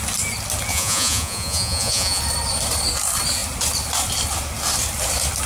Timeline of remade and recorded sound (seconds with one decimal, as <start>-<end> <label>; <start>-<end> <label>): 0.0-0.7 recorded; 0.7-2.2 remade; 2.2-5.5 recorded